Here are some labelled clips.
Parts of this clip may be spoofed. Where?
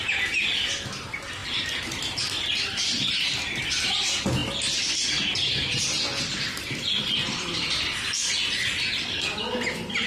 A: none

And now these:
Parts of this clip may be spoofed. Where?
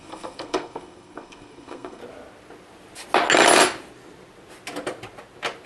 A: 0.0-2.0 (codec, SNAC)